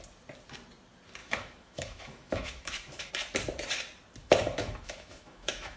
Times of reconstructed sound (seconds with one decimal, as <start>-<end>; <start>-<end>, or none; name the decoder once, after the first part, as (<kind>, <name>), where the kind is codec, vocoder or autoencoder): 1.2-3.1 (autoencoder, DAC-VAE); 4.2-5.8